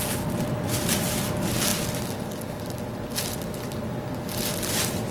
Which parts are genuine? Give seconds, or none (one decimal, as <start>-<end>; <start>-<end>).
0.0-5.1

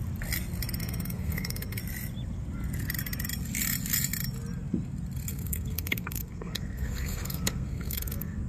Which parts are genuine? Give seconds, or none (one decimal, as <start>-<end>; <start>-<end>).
0.0-0.8; 1.8-5.3

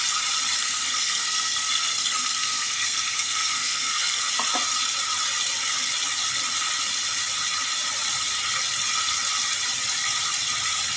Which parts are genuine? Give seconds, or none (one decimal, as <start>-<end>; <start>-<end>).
0.0-0.6; 4.2-11.0